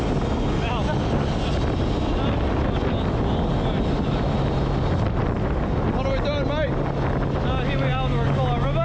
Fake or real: real